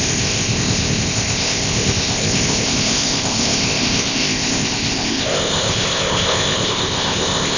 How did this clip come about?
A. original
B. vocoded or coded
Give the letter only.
B